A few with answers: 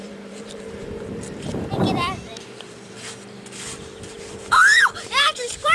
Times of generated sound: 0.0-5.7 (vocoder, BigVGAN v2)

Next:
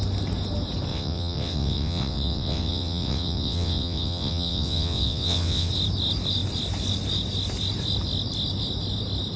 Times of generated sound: 0.9-5.7 (vocoder, WaveNeXt)